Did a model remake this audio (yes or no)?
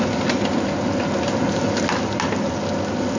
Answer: no